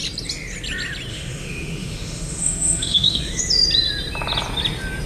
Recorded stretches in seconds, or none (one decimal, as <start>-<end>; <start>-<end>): 0.0-1.1; 3.4-5.1